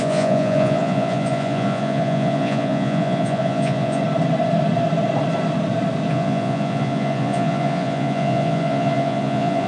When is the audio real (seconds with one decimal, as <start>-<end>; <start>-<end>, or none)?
4.0-6.1